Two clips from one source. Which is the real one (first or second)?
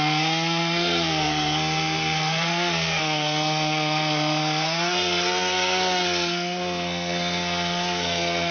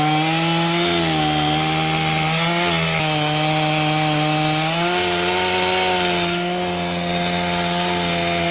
second